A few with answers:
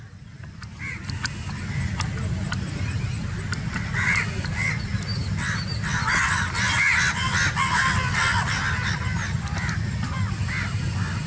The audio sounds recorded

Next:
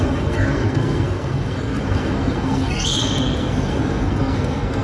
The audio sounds remade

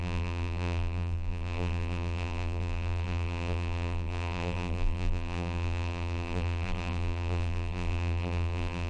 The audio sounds remade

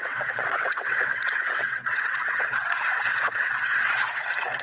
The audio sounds remade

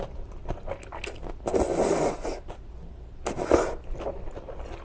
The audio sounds recorded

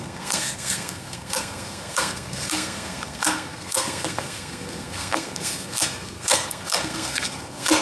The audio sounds remade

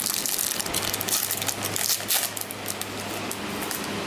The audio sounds recorded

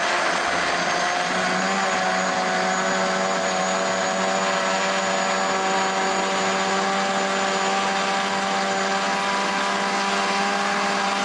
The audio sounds recorded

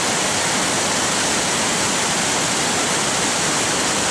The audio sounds recorded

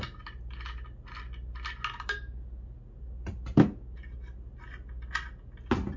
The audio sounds recorded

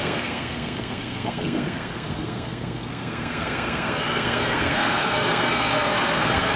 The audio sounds remade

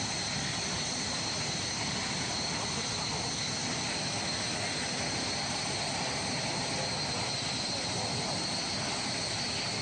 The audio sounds recorded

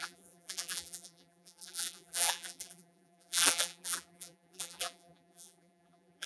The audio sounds remade